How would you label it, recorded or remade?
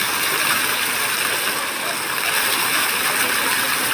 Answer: recorded